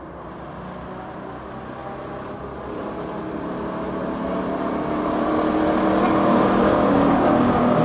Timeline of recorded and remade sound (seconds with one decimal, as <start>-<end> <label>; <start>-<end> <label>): 0.0-6.2 recorded; 6.2-7.8 remade